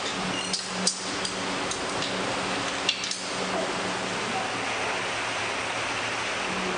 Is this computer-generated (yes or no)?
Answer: no